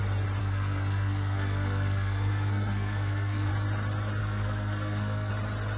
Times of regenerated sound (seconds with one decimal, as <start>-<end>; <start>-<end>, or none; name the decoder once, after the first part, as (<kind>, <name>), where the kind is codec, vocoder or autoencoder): 0.4-3.5 (codec, SNAC); 4.2-5.3